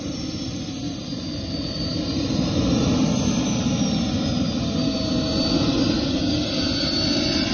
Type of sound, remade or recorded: recorded